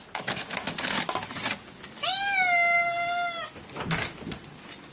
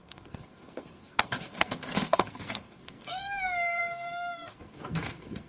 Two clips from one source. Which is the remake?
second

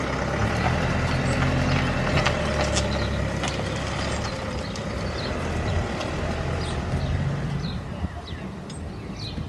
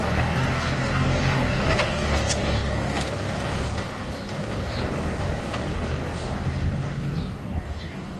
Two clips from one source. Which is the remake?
second